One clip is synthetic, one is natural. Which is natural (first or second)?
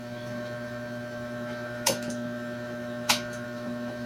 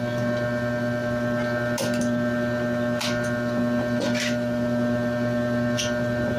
second